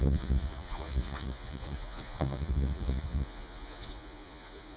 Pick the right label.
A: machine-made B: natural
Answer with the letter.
A